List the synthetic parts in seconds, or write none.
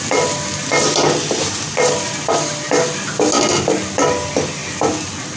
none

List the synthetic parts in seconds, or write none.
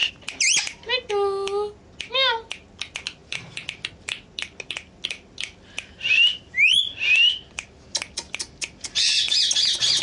none